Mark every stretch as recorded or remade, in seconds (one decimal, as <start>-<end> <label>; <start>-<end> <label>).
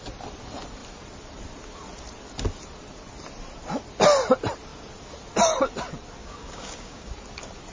0.0-6.2 recorded; 6.2-7.1 remade; 7.1-7.7 recorded